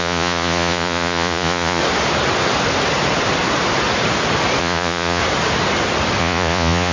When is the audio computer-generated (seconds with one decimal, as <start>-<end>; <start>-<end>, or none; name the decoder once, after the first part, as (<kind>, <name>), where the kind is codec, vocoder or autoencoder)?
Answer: 0.0-1.8 (vocoder, Vocos); 4.6-5.2; 6.2-6.9